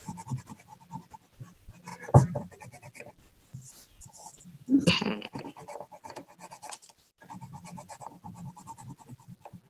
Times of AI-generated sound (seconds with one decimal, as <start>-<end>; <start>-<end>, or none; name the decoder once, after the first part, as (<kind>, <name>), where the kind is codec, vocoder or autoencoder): none